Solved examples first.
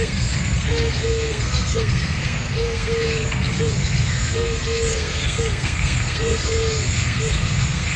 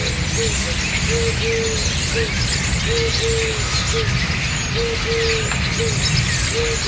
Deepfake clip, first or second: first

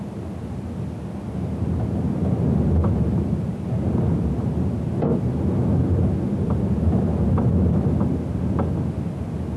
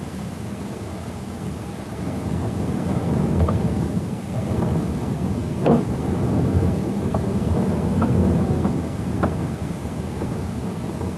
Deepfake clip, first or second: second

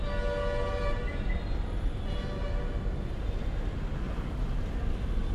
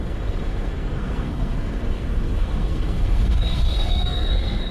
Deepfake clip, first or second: second